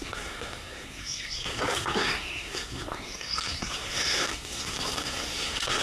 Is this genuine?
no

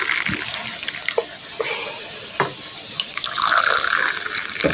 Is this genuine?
yes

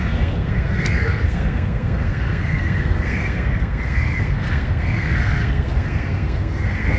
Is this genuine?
no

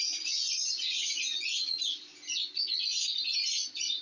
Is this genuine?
yes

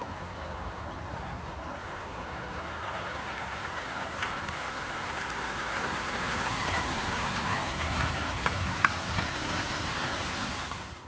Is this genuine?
no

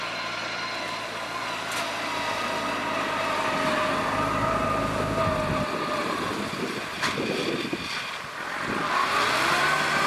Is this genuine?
yes